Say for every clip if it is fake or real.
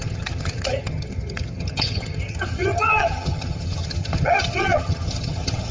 fake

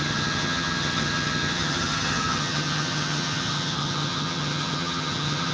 fake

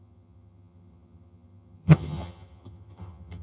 fake